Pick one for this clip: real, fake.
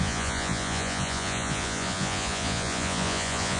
fake